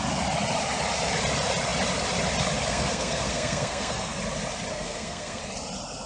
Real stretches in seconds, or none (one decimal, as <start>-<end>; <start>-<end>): 0.0-2.7; 4.2-4.7; 5.4-6.1